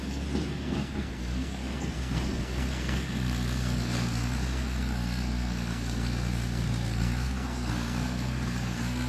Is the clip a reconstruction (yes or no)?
yes